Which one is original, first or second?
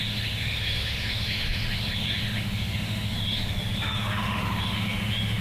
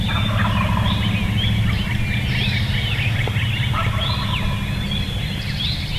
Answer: second